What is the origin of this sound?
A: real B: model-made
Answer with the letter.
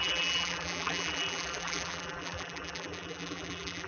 B